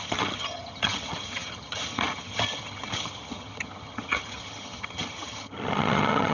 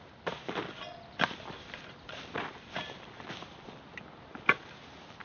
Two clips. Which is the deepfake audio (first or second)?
first